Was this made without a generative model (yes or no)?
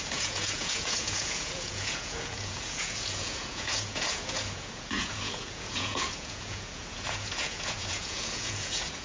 no